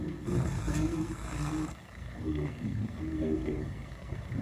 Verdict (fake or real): fake